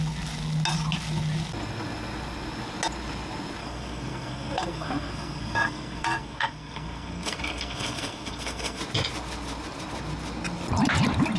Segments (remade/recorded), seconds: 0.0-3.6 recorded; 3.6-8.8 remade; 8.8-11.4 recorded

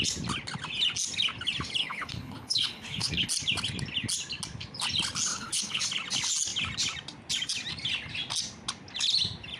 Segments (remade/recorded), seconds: 0.0-1.8 recorded; 1.8-3.3 remade; 3.3-5.3 recorded; 5.3-5.8 remade; 5.8-9.6 recorded

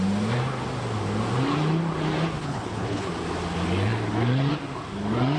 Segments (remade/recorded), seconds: 0.0-2.4 recorded; 2.4-3.1 remade; 3.1-5.4 recorded

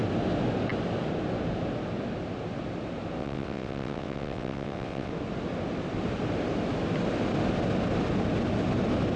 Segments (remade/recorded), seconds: 0.0-3.2 recorded; 3.2-5.1 remade; 5.1-9.2 recorded

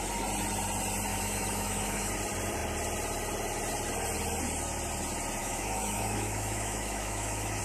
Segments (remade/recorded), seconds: 0.0-1.1 recorded; 1.1-2.1 remade; 2.1-5.4 recorded; 5.4-7.6 remade

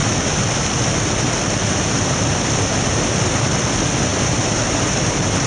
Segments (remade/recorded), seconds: 0.0-5.5 recorded